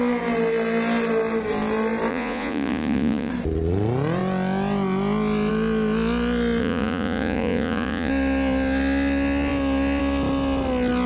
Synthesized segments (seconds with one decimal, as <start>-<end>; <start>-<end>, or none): 2.1-3.3; 6.6-8.1